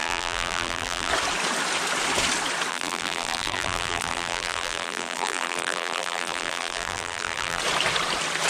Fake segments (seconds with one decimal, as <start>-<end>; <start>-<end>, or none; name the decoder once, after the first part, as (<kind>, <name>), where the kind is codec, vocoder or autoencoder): 0.0-1.1 (vocoder, BigVGAN v2); 2.7-7.6